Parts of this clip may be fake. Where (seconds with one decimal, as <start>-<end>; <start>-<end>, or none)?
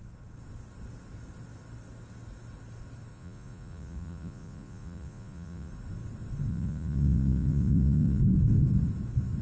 3.1-5.7; 6.5-8.2